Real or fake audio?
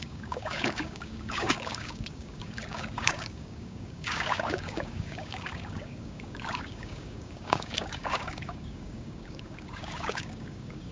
fake